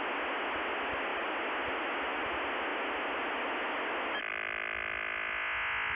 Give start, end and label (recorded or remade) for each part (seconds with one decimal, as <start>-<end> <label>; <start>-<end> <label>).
0.0-5.9 recorded